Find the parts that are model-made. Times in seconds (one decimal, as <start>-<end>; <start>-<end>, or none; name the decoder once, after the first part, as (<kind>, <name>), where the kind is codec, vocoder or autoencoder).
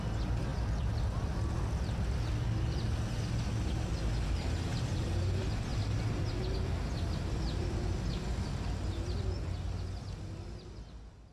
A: none